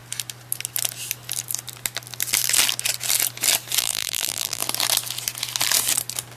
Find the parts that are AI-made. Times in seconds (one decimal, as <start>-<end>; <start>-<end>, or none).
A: 3.8-4.6